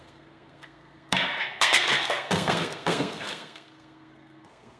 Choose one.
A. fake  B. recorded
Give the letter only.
A